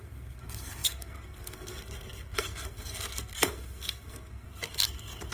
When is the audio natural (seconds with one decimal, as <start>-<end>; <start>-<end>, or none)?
none